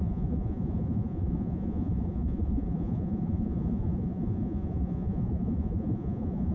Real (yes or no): no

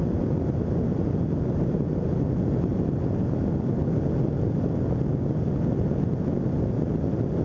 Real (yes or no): yes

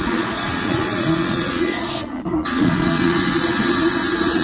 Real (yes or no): no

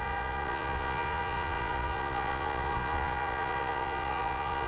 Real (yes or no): no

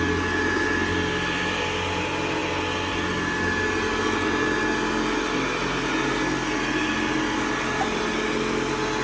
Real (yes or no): yes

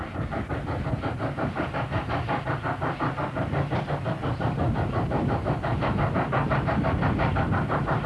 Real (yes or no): yes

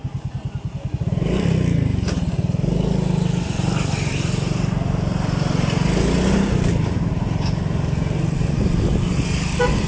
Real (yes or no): yes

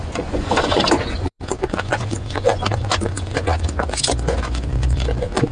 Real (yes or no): no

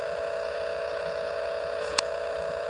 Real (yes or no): no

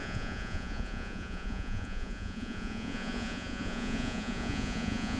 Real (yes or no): no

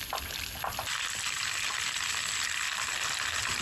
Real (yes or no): yes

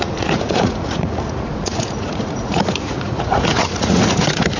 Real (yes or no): no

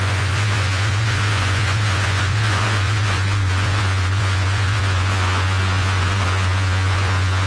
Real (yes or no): no